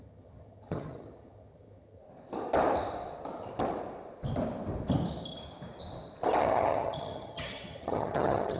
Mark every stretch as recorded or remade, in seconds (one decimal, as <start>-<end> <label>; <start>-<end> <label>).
0.0-2.0 remade; 2.0-6.4 recorded; 6.4-8.6 remade